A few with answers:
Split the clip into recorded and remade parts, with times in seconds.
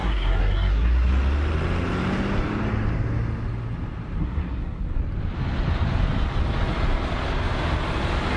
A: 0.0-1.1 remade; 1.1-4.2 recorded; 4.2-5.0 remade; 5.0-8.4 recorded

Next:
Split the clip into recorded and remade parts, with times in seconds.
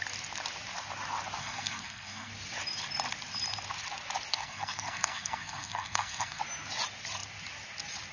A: 0.0-1.4 recorded; 1.4-2.3 remade; 2.3-4.3 recorded; 4.3-6.4 remade; 6.4-8.1 recorded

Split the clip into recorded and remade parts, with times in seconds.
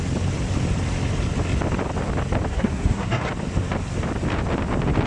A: 0.0-2.5 recorded; 2.5-3.3 remade; 3.3-5.1 recorded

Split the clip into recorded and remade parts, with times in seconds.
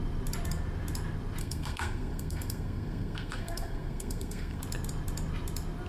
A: 0.0-1.4 recorded; 1.4-4.6 remade; 4.6-5.9 recorded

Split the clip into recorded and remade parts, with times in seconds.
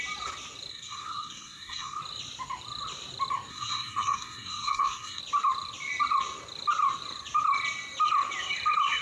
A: 0.0-0.7 recorded; 0.7-2.0 remade; 2.0-3.5 recorded; 3.5-5.2 remade; 5.2-9.0 recorded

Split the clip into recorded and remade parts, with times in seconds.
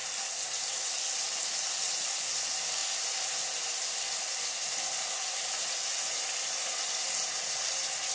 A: 0.0-8.1 recorded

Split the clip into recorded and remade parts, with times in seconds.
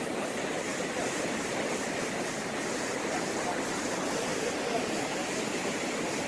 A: 0.0-6.3 recorded